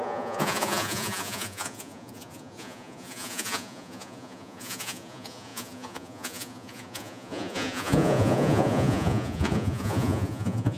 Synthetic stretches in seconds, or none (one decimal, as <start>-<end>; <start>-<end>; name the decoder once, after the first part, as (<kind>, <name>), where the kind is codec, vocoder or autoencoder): 0.0-10.8 (vocoder, Vocos)